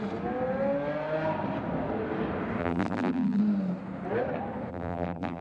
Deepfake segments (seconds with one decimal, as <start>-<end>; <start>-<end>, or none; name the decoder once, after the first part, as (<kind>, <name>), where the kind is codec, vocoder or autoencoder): 2.6-3.4 (vocoder, BigVGAN v2); 4.7-5.4